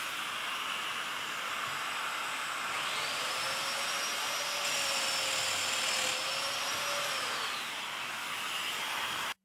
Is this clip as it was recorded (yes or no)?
yes